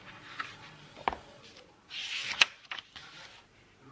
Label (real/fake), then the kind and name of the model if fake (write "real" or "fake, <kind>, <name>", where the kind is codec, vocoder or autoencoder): real